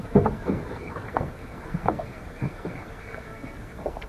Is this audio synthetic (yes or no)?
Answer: yes